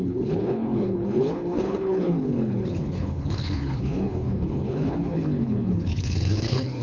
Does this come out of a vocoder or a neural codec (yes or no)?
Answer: yes